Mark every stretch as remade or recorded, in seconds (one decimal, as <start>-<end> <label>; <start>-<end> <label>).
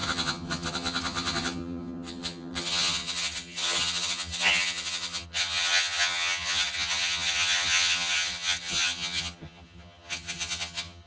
0.0-11.1 remade